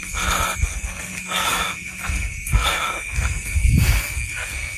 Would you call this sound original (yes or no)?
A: no